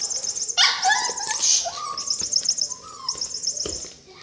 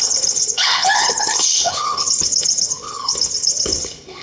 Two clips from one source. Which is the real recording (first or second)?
first